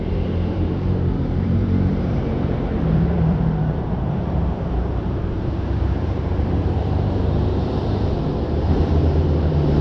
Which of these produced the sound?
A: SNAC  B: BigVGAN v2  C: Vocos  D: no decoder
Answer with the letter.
B